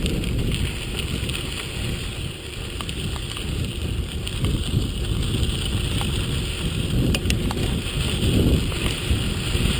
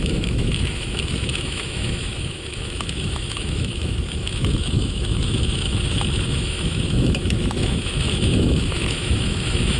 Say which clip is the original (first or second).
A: first